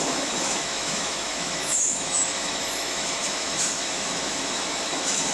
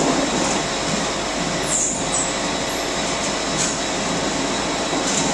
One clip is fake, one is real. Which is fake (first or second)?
first